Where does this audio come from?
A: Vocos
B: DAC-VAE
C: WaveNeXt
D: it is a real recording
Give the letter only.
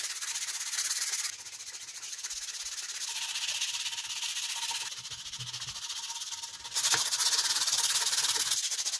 D